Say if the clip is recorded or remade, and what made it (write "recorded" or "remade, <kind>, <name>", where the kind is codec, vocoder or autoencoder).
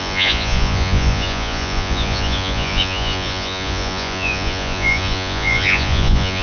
remade, vocoder, Vocos